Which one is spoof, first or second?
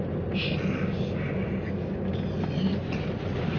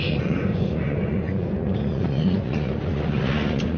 second